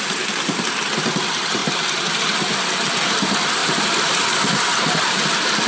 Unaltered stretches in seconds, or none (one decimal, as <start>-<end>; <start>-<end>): 0.0-5.7